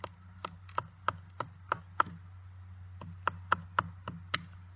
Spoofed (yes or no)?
no